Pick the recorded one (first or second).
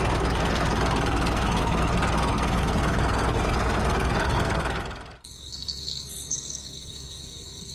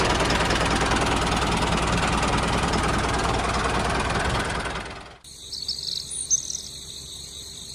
second